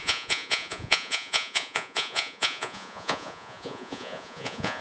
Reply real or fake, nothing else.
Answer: fake